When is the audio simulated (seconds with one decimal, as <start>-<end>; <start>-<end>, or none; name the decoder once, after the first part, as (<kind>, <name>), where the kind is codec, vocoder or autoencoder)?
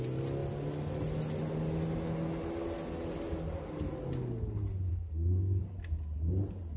4.9-5.6 (codec, SNAC)